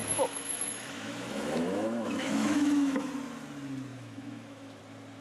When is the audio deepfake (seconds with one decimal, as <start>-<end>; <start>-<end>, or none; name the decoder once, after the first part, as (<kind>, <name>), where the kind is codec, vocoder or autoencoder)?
0.0-3.1 (autoencoder, DAC-VAE); 3.9-4.8